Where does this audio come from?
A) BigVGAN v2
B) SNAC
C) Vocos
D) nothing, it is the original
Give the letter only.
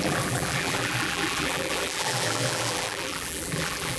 A